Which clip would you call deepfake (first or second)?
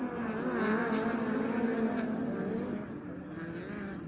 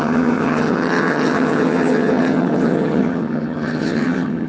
second